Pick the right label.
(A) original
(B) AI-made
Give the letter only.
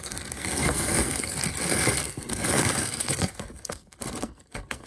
B